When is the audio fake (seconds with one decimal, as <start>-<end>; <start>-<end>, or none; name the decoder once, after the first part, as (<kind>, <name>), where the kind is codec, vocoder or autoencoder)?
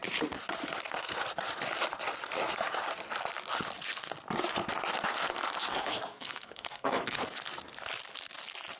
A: 5.7-7.2 (codec, SNAC)